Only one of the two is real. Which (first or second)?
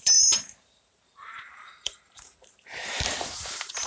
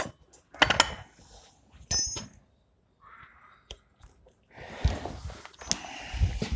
second